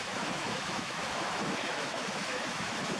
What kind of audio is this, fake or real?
fake